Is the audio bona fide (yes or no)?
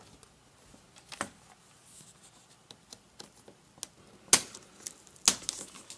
yes